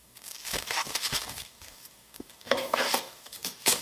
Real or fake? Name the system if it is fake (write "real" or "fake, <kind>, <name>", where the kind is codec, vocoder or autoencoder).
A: fake, codec, DAC